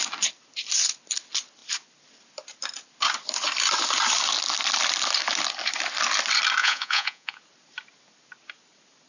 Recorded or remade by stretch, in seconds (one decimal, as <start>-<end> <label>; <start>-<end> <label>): 0.0-6.6 recorded; 6.6-7.4 remade; 7.4-9.1 recorded